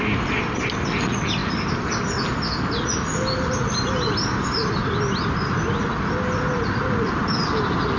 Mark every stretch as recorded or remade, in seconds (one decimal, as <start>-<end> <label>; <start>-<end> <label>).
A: 0.0-8.0 recorded